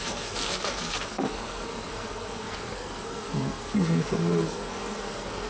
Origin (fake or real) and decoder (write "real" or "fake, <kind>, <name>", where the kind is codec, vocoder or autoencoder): fake, codec, SNAC